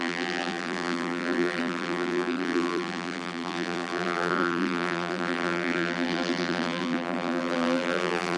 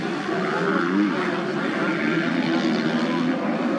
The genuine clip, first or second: second